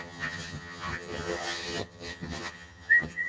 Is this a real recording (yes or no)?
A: no